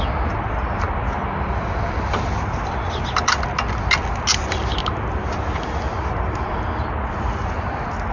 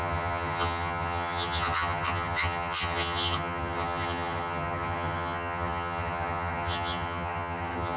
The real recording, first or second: first